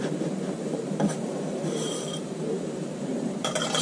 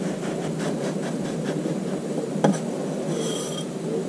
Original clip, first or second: second